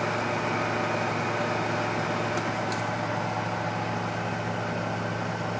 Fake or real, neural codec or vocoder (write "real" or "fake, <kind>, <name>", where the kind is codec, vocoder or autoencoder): real